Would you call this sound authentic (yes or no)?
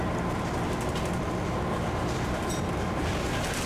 yes